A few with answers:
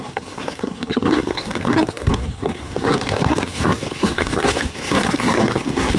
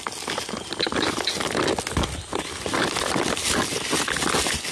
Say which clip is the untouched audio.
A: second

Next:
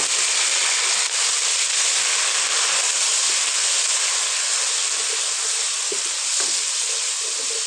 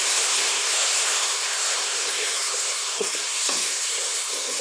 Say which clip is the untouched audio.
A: first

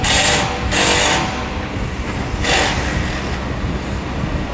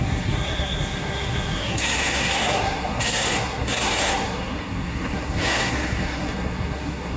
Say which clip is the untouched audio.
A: first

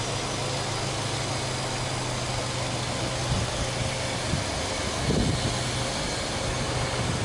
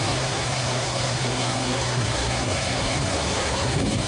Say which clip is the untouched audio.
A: first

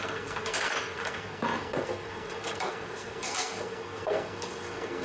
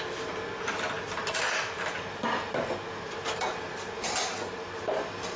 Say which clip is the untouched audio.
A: second